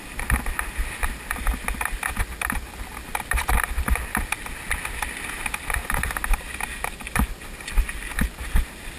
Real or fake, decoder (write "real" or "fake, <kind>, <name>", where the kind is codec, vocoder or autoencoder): real